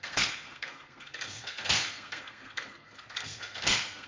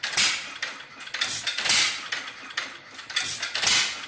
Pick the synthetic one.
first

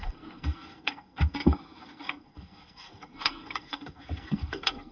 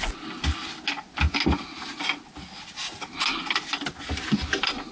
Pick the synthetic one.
first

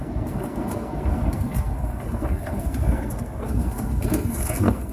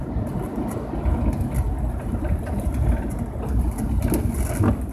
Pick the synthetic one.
first